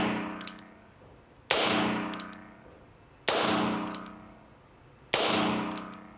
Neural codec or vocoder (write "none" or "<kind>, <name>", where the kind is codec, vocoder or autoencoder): none